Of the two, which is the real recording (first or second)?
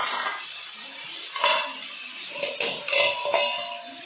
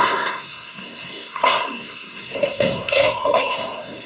first